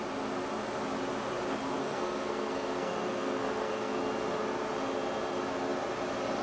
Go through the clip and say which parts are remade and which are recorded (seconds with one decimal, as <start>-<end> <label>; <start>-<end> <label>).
0.0-1.8 recorded; 1.8-4.0 remade; 4.0-6.4 recorded